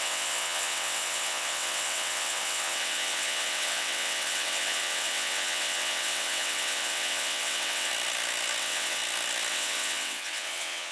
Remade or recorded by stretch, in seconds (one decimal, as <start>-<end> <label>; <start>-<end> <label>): 0.0-7.9 remade; 7.9-8.6 recorded; 8.6-9.0 remade; 9.0-9.5 recorded; 9.5-10.9 remade